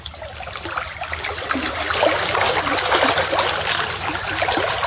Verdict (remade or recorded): recorded